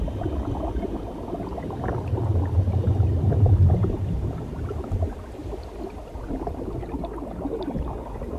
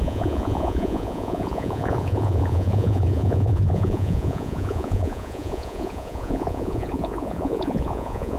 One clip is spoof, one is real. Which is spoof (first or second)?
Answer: second